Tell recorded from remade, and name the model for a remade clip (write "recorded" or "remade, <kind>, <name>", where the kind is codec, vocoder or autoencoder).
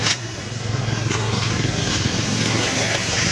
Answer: remade, codec, SNAC